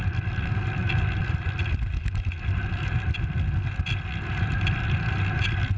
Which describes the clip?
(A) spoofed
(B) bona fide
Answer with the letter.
B